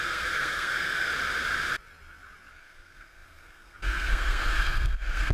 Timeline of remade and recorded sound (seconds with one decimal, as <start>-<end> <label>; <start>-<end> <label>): 0.0-1.1 remade; 1.1-2.5 recorded; 2.5-5.3 remade